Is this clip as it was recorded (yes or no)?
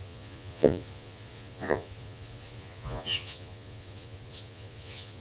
no